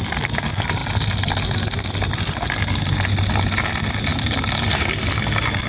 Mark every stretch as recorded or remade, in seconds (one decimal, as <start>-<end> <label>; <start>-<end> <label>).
0.0-5.7 recorded